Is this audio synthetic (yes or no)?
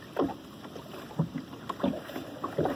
no